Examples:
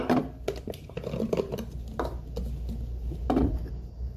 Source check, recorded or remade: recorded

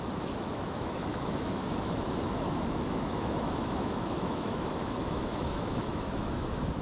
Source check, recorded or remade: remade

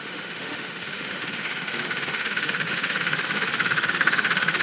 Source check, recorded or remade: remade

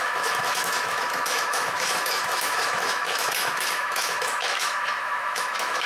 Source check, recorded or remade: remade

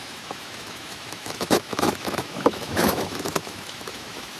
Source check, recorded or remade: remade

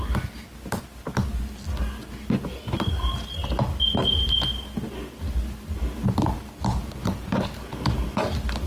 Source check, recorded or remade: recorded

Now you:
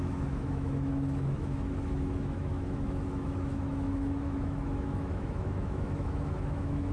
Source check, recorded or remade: remade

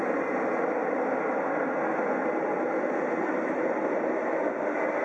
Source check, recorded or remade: recorded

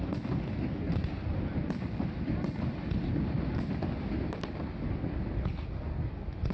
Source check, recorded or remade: recorded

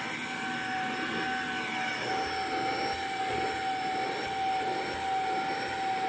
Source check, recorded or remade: recorded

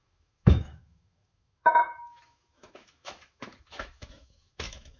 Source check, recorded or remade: remade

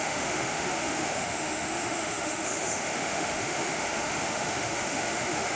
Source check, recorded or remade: remade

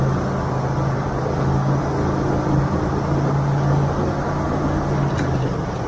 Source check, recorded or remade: recorded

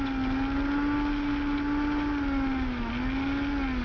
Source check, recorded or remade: recorded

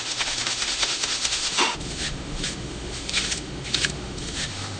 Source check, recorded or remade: remade